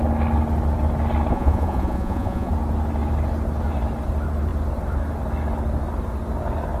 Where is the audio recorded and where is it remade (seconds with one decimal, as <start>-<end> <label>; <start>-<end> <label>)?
0.0-1.3 recorded; 1.3-2.5 remade; 2.5-6.8 recorded